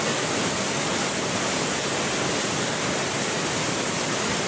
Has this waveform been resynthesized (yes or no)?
no